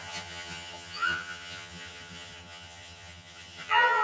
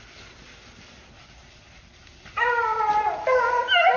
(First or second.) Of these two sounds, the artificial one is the first